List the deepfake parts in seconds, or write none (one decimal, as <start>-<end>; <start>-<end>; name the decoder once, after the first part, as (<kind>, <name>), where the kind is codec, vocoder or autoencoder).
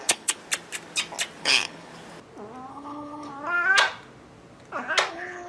0.0-0.4 (codec, HILCodec); 1.4-1.9; 2.7-3.3; 5.1-5.5